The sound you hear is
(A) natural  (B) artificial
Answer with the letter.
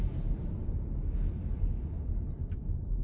B